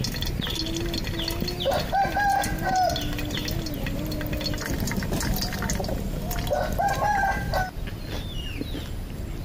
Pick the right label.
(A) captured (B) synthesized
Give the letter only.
A